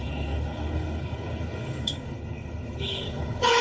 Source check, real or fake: fake